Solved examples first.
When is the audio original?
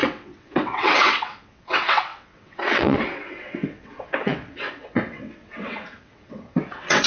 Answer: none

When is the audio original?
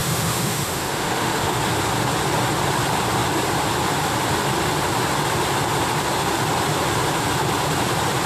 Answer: 1.6-8.3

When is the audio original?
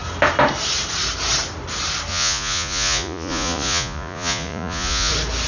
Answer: 0.0-2.1; 5.1-5.5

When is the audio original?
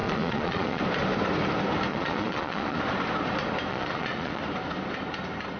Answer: 0.8-1.9; 2.8-3.7; 4.4-5.6